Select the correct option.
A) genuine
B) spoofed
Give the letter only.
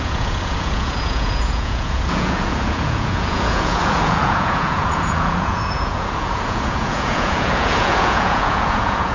B